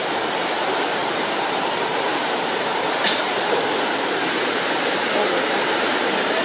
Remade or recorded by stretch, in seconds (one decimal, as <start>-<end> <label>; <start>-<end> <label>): 0.0-2.7 remade; 2.7-4.9 recorded; 4.9-6.4 remade